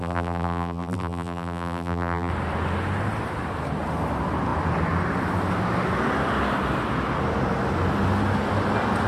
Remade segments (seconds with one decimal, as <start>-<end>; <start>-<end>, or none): 0.0-2.3